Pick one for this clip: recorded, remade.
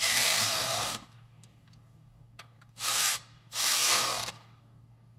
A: remade